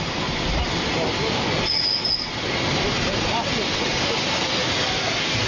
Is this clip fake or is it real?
real